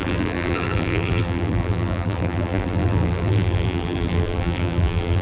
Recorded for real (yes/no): no